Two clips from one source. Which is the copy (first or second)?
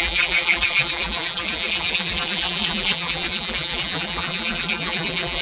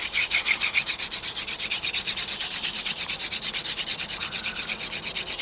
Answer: first